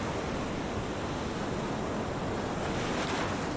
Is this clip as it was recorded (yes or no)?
yes